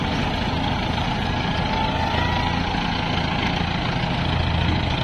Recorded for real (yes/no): yes